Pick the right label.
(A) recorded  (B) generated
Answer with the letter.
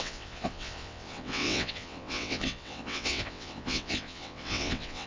B